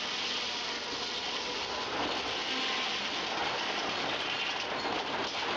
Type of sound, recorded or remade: recorded